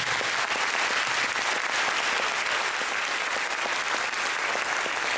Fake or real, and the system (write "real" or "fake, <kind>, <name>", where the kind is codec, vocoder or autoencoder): real